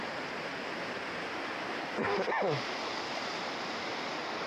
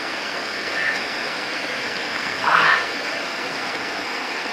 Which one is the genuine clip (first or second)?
first